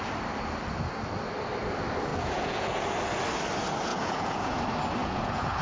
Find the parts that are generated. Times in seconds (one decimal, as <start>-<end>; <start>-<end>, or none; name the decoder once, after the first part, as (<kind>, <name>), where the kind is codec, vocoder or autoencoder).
2.1-2.8 (vocoder, Vocos); 3.9-4.6; 5.0-5.6

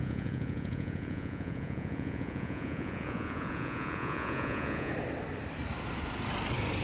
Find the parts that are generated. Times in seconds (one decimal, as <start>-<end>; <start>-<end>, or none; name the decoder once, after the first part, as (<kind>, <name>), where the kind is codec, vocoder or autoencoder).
0.0-4.9 (vocoder, Vocos)

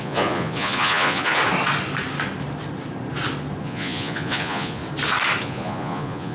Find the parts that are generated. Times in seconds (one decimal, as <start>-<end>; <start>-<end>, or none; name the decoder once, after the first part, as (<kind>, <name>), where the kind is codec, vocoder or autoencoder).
0.0-1.4 (vocoder, Vocos); 3.6-4.8; 5.4-6.3

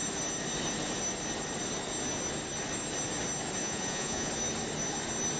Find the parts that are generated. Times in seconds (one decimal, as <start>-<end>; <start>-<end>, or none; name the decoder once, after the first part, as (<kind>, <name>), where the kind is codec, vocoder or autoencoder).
3.6-4.3 (vocoder, Vocos)

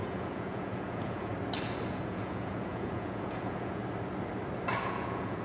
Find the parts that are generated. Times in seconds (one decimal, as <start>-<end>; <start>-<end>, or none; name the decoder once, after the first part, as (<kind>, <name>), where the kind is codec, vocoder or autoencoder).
0.0-1.3 (vocoder, Vocos); 1.9-3.8; 4.8-5.4

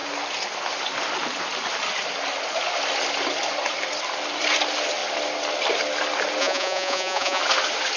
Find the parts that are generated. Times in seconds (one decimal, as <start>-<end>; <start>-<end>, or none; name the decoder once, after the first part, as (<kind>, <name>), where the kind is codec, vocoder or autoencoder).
6.4-7.4 (vocoder, Vocos)